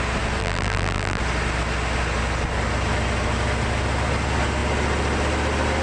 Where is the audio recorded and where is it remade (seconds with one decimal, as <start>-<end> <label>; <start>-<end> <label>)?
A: 0.0-0.4 recorded; 0.4-1.2 remade; 1.2-5.8 recorded